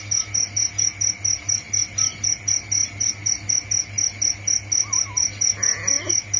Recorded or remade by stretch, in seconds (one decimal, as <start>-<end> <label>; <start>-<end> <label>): 0.0-6.4 recorded